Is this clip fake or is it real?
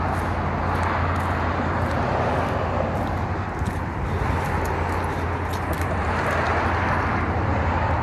real